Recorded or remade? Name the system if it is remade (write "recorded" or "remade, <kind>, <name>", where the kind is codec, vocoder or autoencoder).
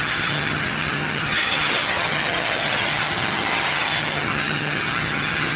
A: remade, vocoder, HiFi-GAN